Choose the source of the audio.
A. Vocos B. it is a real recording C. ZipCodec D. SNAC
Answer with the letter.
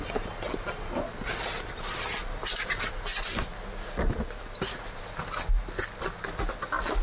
B